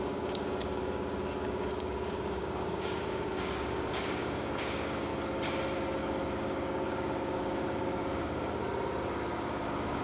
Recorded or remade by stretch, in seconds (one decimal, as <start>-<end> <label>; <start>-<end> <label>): 0.0-5.1 remade; 5.1-6.0 recorded; 6.0-8.6 remade; 8.6-9.3 recorded; 9.3-10.0 remade